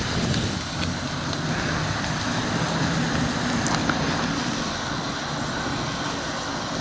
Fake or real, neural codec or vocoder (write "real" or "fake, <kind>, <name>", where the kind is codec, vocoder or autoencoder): real